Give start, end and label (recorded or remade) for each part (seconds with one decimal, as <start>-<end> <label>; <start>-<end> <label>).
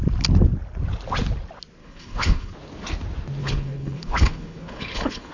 0.0-1.8 recorded; 1.8-2.5 remade; 2.5-3.4 recorded; 3.4-5.3 remade